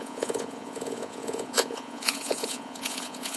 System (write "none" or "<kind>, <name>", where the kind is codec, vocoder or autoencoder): vocoder, Vocos